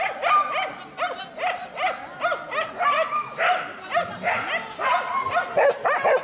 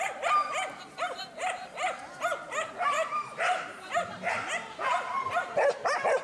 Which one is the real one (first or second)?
first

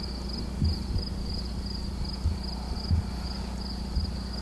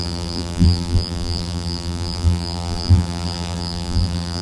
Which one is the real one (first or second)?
first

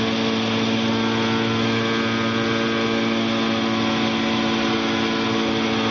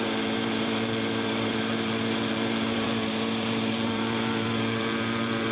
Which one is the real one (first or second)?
first